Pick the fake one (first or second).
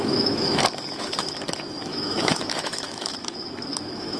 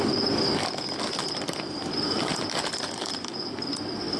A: first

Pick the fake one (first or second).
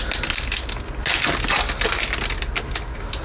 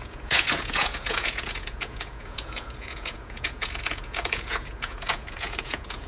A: second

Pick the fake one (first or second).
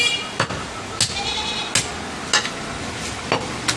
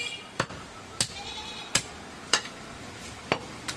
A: second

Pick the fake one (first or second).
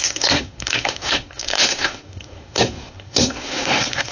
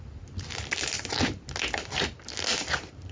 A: first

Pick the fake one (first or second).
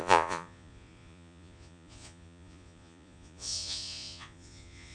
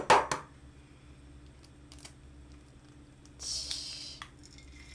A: first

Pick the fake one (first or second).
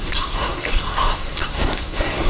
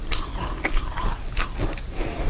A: first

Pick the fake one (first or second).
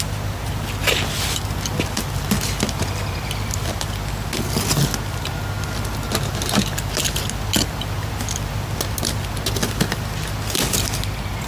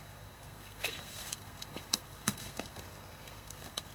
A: second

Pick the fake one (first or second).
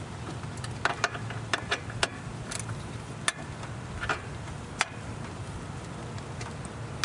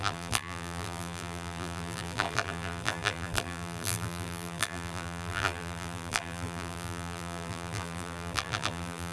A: second